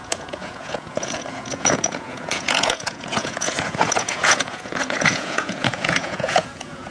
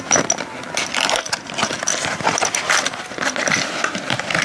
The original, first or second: second